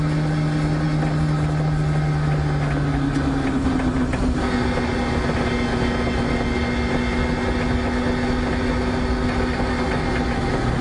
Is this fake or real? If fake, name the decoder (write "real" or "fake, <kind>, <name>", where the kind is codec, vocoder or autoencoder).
real